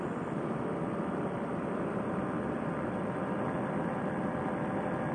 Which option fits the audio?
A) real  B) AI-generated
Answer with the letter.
B